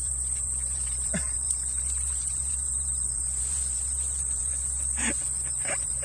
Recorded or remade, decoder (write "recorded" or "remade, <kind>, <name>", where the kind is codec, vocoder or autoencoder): remade, vocoder, BigVGAN v2